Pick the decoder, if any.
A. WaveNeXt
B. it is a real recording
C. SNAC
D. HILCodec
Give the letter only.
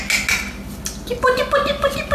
B